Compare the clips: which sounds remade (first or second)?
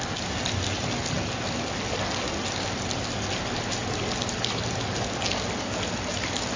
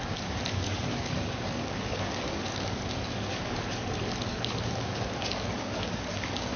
second